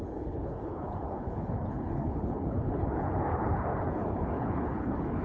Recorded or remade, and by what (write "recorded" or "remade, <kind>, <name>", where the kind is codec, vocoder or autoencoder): remade, codec, HILCodec